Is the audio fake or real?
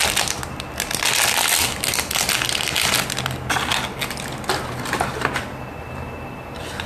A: real